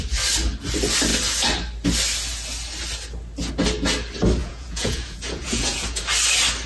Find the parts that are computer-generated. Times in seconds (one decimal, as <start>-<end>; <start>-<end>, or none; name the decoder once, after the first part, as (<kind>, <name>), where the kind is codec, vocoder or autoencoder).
4.4-6.0 (vocoder, Vocos)